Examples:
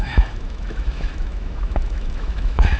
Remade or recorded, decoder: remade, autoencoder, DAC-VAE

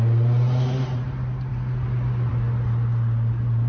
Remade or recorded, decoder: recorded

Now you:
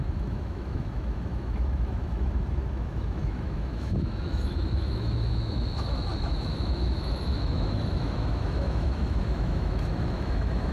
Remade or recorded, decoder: remade, autoencoder, DAC-VAE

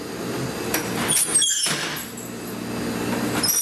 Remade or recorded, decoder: recorded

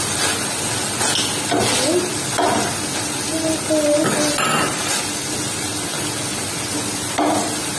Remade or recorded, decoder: recorded